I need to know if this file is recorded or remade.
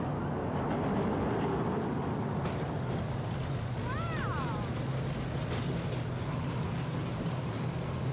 recorded